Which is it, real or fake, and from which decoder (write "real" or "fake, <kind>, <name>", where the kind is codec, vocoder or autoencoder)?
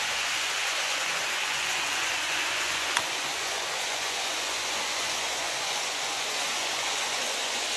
fake, vocoder, Vocos